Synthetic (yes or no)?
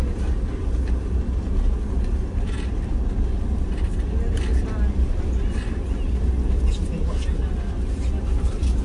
no